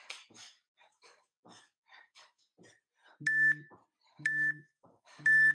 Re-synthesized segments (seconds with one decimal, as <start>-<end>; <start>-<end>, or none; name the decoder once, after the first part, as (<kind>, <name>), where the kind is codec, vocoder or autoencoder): 0.0-2.5 (codec, DAC); 4.1-5.5